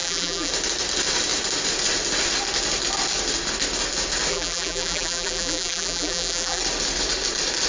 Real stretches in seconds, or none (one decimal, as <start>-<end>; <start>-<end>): 0.5-4.3; 6.6-7.7